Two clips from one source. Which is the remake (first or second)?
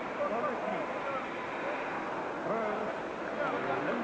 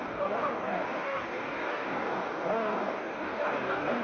second